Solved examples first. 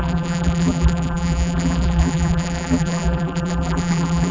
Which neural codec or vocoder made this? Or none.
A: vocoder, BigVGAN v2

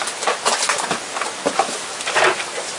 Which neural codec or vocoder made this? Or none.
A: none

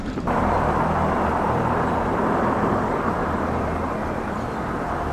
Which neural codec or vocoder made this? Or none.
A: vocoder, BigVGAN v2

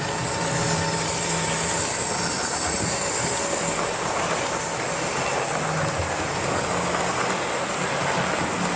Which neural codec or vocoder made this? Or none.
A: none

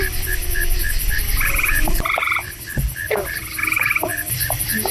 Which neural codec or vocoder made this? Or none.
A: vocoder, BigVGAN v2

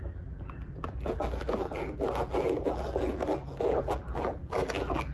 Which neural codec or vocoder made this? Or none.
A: vocoder, BigVGAN v2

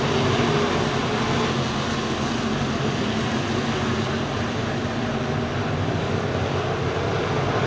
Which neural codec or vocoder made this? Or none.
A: none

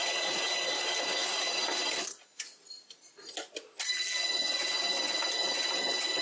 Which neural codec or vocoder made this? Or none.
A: none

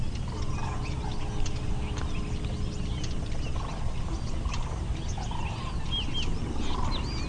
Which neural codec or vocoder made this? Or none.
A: none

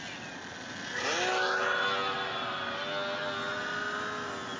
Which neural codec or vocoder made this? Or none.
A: none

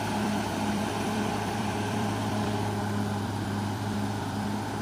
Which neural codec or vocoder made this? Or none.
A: vocoder, BigVGAN v2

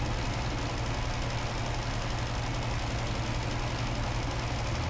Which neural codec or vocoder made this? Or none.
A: none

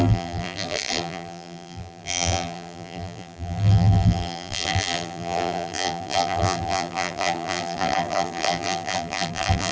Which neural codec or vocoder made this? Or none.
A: vocoder, BigVGAN v2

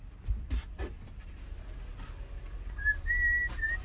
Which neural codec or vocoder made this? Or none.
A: none